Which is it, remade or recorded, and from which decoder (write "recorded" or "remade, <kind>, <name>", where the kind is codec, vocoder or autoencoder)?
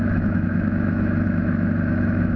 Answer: remade, autoencoder, DAC-VAE